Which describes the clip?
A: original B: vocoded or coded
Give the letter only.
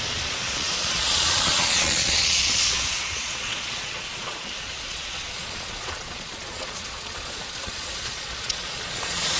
B